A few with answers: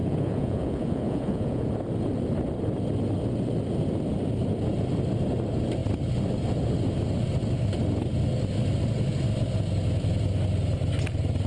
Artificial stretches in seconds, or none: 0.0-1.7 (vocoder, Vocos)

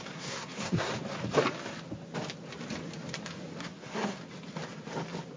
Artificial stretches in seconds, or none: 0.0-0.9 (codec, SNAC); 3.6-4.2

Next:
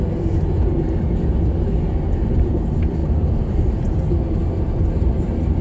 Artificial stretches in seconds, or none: 3.0-4.0 (vocoder, BigVGAN v2)